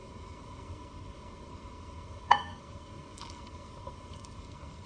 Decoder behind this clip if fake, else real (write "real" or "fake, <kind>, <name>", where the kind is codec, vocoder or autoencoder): fake, codec, SNAC